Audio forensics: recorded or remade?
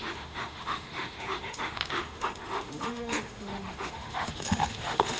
remade